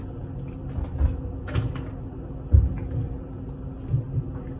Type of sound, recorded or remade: recorded